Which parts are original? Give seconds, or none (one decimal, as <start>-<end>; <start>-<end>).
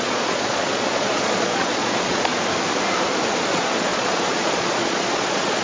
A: 2.3-3.4